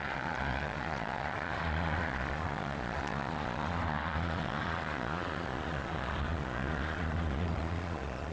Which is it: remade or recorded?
remade